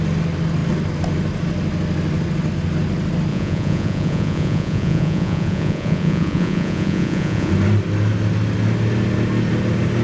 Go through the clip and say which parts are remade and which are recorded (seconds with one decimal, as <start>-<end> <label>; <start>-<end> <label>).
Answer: 0.0-3.3 recorded; 3.3-7.5 remade; 7.5-10.0 recorded